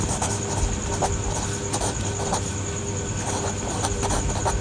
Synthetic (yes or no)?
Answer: no